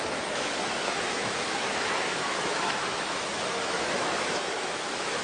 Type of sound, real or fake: fake